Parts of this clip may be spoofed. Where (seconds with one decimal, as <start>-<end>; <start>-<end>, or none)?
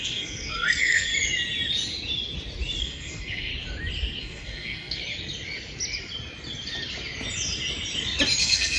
0.0-1.1; 2.8-3.5; 4.2-5.0; 8.4-8.8